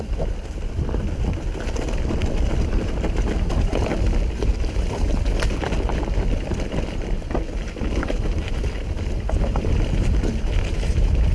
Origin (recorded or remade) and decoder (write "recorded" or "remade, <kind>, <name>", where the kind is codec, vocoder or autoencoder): recorded